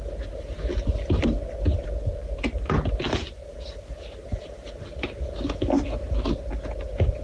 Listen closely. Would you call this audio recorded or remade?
recorded